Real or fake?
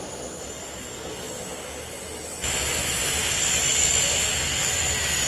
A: real